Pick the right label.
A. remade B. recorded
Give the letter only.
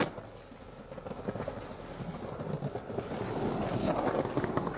B